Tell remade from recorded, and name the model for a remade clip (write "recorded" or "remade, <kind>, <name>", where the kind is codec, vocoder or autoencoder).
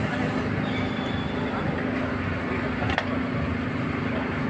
recorded